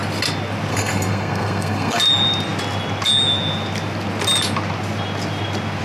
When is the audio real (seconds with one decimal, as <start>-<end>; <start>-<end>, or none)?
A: 0.0-0.7; 2.0-5.8